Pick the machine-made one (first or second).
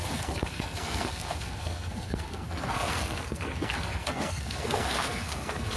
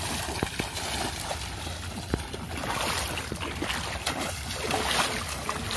first